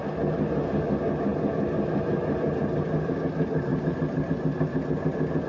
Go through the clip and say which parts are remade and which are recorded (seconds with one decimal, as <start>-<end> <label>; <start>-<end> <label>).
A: 0.0-3.7 recorded; 3.7-4.3 remade; 4.3-5.5 recorded

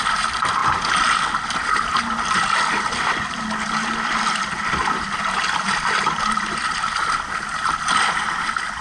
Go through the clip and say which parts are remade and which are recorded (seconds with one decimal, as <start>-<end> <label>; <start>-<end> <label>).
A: 0.0-8.8 recorded

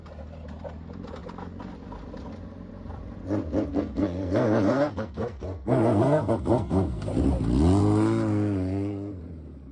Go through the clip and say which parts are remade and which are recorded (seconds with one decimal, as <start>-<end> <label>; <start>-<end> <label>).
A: 0.0-3.7 recorded; 3.7-7.1 remade; 7.1-7.8 recorded; 7.8-9.2 remade; 9.2-9.7 recorded

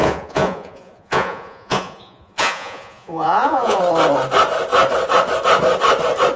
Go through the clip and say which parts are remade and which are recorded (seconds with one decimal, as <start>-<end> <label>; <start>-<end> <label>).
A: 0.0-3.8 remade; 3.8-6.4 recorded

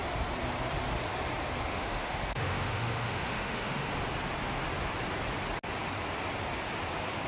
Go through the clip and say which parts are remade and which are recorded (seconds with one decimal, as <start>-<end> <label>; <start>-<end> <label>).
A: 0.0-1.7 recorded; 1.7-3.9 remade; 3.9-7.3 recorded

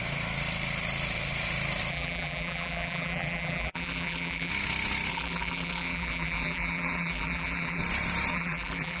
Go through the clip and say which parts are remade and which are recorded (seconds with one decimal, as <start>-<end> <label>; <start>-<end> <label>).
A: 0.0-1.9 recorded; 1.9-4.5 remade; 4.5-5.1 recorded; 5.1-7.8 remade; 7.8-8.3 recorded; 8.3-9.0 remade